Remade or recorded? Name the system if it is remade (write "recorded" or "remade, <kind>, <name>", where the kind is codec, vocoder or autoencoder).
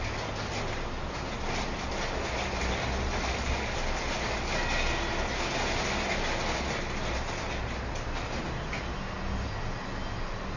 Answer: recorded